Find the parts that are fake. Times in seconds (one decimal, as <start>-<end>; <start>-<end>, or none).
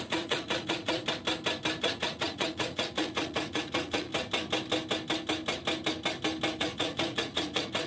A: 0.0-1.0; 1.8-4.1; 6.6-7.9